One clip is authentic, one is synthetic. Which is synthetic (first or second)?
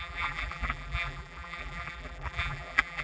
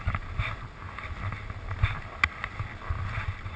first